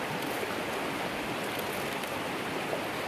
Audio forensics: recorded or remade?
recorded